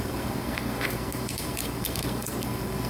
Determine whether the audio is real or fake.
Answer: fake